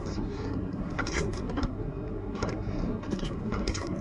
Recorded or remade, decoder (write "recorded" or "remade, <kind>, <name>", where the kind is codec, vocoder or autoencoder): remade, codec, SNAC